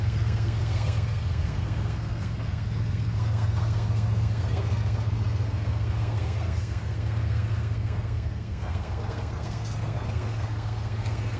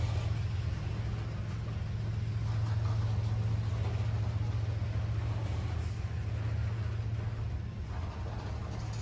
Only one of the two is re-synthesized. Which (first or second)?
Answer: first